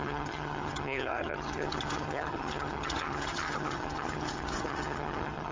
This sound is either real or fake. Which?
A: fake